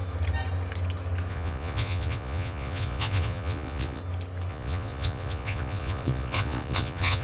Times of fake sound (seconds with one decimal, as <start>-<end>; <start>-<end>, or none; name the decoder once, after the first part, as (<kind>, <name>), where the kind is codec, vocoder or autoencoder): 1.3-4.0 (vocoder, Vocos); 4.5-7.2